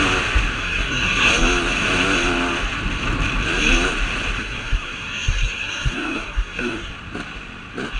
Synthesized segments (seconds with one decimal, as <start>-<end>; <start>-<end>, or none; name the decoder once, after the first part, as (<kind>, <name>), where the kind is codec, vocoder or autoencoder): 0.6-1.3 (codec, SNAC); 4.4-6.9